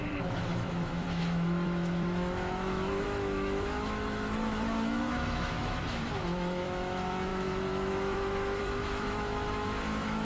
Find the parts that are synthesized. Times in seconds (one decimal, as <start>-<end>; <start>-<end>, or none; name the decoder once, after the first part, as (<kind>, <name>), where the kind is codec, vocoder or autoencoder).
0.0-10.2 (autoencoder, DAC-VAE)

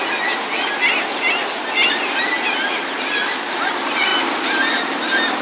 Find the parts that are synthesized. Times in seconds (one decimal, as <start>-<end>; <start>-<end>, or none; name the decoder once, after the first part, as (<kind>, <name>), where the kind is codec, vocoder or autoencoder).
none

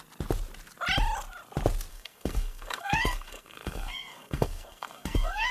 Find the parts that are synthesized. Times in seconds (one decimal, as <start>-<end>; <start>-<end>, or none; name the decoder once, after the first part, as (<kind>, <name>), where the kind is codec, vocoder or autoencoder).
1.9-5.5 (codec, SNAC)

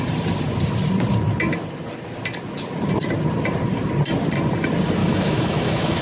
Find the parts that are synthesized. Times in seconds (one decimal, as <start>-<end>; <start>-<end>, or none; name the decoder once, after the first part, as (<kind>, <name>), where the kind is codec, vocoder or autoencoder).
5.0-6.0 (autoencoder, DAC-VAE)

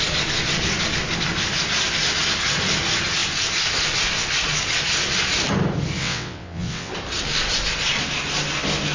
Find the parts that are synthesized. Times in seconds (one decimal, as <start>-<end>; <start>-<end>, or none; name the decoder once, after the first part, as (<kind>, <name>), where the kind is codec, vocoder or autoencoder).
6.0-6.9 (vocoder, WaveNeXt)

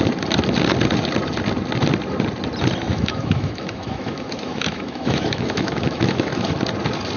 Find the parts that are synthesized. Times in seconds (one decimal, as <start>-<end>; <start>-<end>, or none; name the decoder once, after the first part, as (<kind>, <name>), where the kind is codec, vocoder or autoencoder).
2.9-6.5 (autoencoder, DAC-VAE)